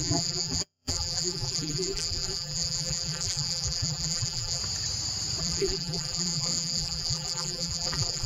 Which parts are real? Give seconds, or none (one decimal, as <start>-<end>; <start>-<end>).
4.6-5.4